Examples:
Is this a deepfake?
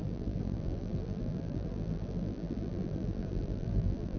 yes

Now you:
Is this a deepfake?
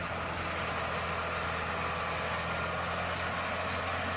no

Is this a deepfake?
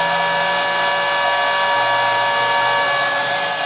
no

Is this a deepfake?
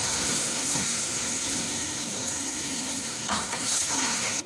yes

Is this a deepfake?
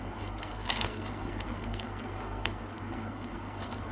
yes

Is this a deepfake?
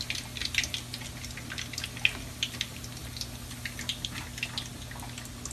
no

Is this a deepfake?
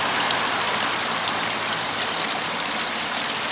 yes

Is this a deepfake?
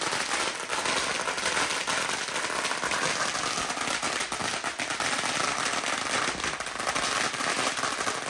no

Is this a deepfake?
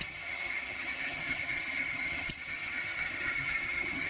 yes